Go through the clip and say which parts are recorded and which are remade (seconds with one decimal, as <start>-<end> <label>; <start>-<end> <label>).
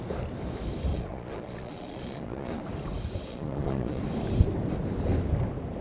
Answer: 0.0-0.9 recorded; 0.9-2.6 remade; 2.6-3.3 recorded; 3.3-4.0 remade; 4.0-5.8 recorded